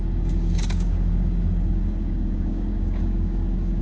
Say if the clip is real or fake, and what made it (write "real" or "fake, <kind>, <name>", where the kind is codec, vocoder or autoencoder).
fake, codec, DAC